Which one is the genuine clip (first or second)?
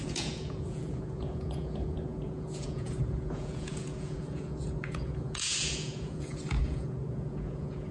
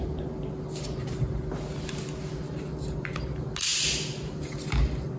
second